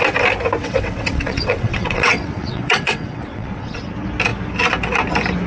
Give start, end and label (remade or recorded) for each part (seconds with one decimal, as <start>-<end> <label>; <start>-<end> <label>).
0.0-0.6 recorded; 0.6-3.8 remade; 3.8-5.5 recorded